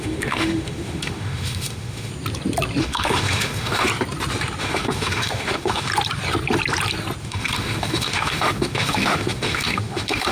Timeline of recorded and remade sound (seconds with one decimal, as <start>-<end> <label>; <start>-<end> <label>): 0.0-2.1 remade; 2.1-2.8 recorded; 2.8-3.9 remade; 3.9-4.6 recorded; 4.6-5.9 remade; 5.9-7.2 recorded; 7.2-10.3 remade